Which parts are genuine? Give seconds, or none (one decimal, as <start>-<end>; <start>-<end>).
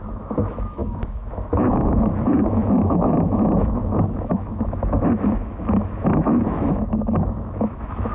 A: none